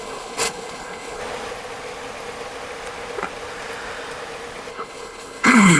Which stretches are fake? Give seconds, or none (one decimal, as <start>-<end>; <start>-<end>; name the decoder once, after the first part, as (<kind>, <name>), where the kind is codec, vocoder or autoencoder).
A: 0.0-1.2 (codec, HILCodec); 4.7-5.8